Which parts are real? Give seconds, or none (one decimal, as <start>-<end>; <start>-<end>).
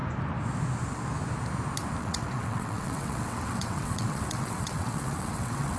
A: 0.0-2.0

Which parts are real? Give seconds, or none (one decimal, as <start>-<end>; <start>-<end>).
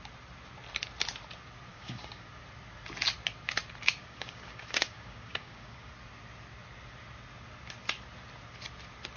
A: 0.0-1.7; 2.3-4.0; 5.9-9.2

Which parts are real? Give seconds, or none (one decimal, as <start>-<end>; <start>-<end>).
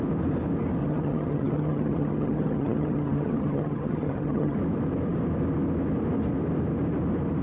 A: 0.0-0.8; 4.6-7.4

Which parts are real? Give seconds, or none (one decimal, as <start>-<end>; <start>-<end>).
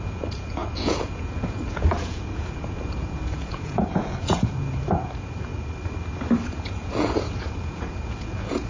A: 5.5-6.5